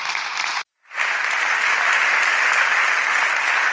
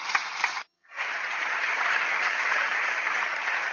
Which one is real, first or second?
first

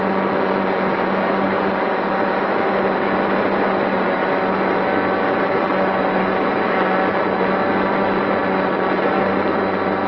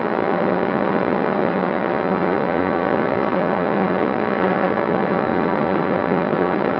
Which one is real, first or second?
first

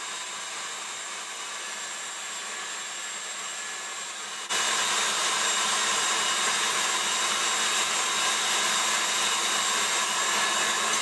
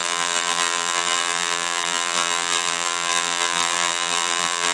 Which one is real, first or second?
first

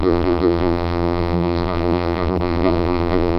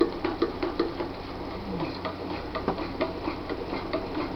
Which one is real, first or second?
second